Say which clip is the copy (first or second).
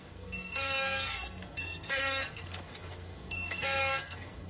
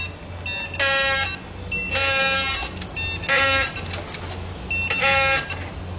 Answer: first